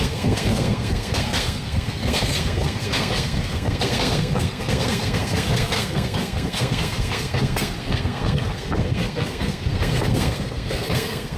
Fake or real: fake